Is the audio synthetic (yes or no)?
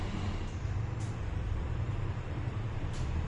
yes